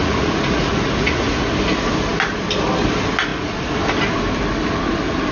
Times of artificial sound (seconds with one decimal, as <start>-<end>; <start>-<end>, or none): 0.0-1.5; 3.3-3.8